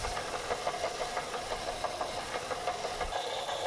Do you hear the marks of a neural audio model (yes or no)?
no